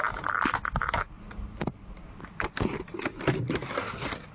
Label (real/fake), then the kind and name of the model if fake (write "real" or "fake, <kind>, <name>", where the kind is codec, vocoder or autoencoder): real